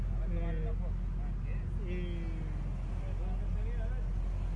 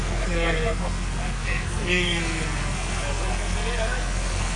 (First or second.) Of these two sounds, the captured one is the first